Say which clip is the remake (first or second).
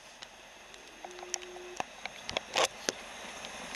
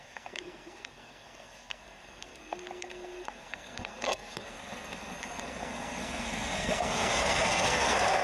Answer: second